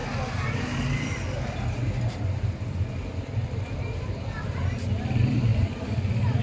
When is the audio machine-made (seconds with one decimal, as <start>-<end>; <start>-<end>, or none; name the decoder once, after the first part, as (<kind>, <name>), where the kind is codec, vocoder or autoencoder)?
none